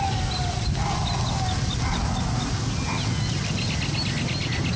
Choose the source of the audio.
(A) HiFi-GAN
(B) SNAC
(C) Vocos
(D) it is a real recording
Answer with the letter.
D